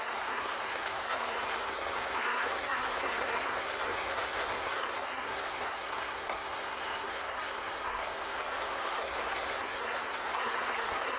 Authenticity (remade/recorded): remade